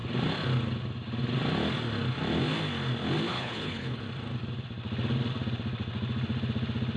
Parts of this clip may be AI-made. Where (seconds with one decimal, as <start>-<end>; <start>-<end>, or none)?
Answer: 3.3-4.0